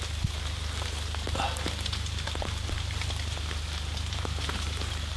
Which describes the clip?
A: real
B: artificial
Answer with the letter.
A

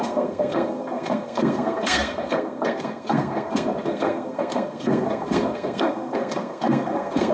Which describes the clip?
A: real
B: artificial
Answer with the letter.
B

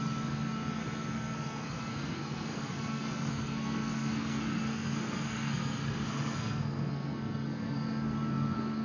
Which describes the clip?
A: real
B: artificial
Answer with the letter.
B